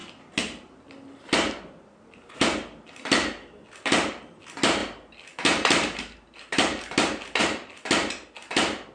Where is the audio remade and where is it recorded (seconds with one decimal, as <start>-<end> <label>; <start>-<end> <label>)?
0.0-8.9 recorded